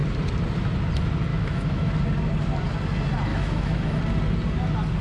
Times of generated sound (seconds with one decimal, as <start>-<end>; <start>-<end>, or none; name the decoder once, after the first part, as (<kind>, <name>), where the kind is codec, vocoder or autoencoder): 1.3-1.9 (autoencoder, DAC-VAE); 3.3-4.0